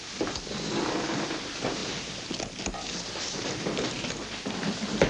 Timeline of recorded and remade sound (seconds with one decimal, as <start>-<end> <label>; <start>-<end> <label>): 0.0-5.1 recorded